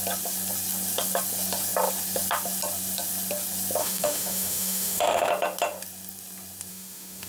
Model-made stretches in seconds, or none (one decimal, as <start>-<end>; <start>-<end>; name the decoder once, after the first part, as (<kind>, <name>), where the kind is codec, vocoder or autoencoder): 3.8-5.3 (autoencoder, DAC-VAE); 6.7-7.3